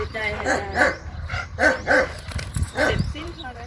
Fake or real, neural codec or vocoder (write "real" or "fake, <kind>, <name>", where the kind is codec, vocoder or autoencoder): fake, vocoder, BigVGAN v2